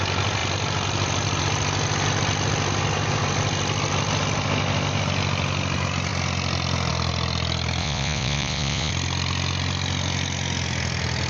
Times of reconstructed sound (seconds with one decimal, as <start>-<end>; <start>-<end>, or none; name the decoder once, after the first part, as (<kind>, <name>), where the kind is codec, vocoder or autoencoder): 7.8-8.9 (vocoder, Vocos)